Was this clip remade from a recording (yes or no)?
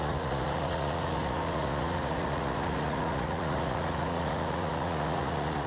yes